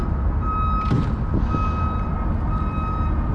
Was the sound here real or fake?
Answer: real